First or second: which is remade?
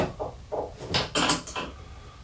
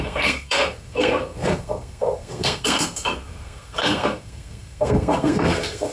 second